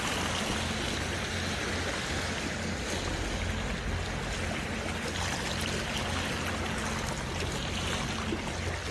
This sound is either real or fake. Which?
real